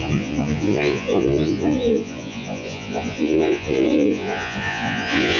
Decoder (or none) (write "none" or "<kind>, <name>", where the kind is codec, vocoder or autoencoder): vocoder, Vocos